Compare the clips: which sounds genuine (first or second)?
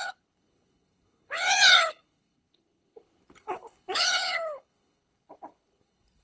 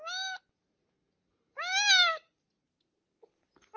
second